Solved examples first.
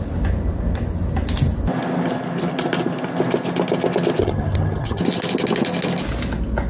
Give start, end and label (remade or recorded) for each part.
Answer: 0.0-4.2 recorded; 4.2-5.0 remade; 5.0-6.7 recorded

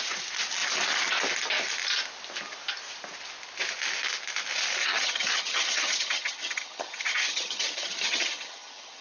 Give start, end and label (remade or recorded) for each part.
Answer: 0.0-4.8 recorded; 4.8-9.0 remade

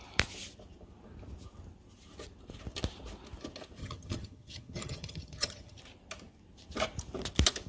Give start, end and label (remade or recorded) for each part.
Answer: 0.0-3.8 recorded; 3.8-5.8 remade; 5.8-7.7 recorded

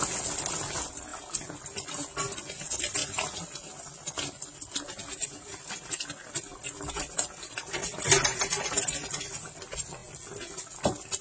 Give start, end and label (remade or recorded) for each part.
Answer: 0.0-11.2 recorded

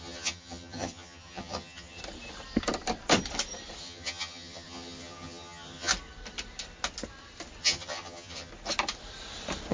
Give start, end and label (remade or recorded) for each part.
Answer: 0.0-2.0 remade; 2.0-3.8 recorded; 3.8-5.9 remade; 5.9-7.6 recorded; 7.6-8.5 remade; 8.5-9.7 recorded